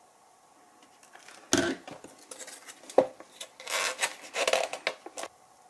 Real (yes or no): yes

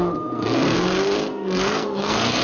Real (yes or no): no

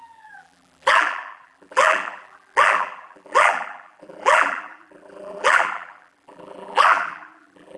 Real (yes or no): no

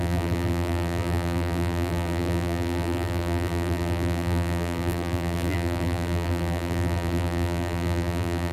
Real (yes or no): no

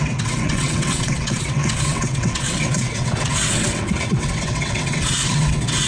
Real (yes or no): no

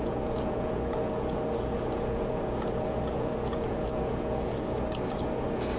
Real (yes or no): no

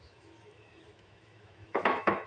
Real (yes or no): no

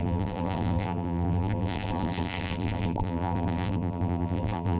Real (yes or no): no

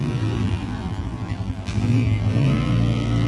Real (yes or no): no